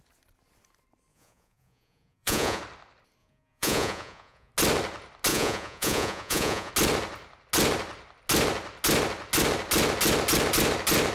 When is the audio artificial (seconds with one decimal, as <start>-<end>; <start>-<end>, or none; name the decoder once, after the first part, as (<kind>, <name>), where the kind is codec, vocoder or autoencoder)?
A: 1.1-2.6 (vocoder, Vocos); 3.2-4.5; 5.3-6.7